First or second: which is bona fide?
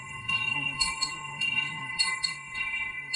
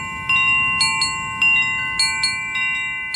second